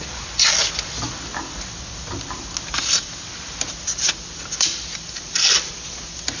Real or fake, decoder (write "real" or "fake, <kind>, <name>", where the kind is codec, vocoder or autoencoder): real